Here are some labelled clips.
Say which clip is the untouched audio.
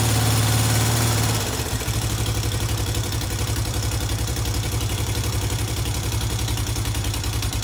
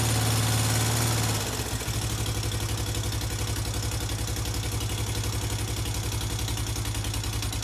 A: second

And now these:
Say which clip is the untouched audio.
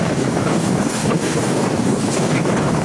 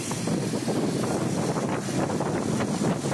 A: second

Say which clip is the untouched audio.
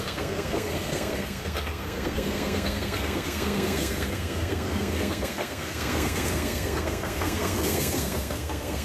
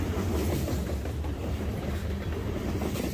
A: second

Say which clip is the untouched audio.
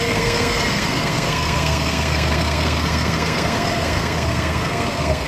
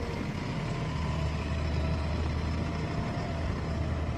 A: second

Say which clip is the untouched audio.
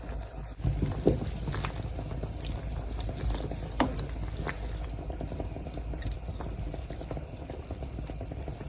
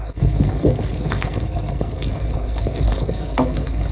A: first